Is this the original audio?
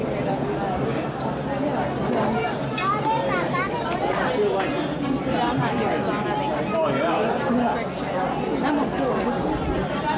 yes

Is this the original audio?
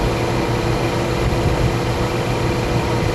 yes